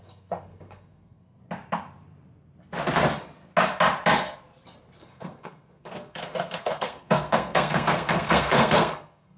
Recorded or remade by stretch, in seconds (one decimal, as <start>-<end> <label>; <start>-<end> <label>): 0.0-1.4 remade; 1.4-5.0 recorded; 5.0-9.4 remade